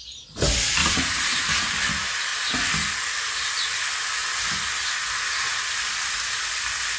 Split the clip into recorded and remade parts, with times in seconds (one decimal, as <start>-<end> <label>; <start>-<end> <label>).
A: 0.0-0.8 recorded; 0.8-1.7 remade; 1.7-7.0 recorded